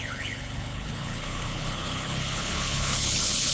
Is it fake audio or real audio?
fake